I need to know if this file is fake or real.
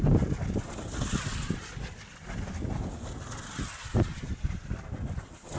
real